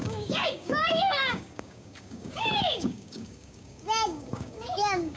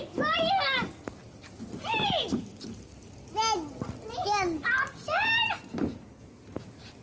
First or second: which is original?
second